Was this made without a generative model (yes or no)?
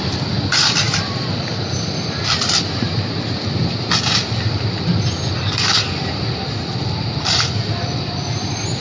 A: yes